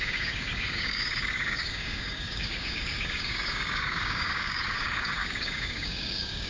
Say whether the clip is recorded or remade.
remade